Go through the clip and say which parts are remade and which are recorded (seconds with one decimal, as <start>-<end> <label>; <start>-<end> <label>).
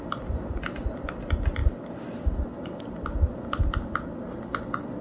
0.0-5.0 recorded